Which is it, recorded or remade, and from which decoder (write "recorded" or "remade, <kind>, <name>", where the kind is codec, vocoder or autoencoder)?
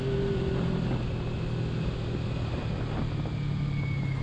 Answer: recorded